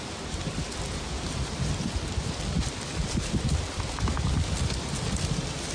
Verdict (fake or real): real